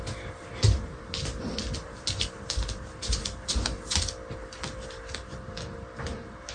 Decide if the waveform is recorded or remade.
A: recorded